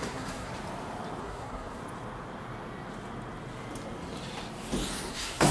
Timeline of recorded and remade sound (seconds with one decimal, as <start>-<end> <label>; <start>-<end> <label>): 0.0-0.5 remade; 0.5-1.2 recorded; 1.2-1.8 remade; 1.8-5.1 recorded; 5.1-5.5 remade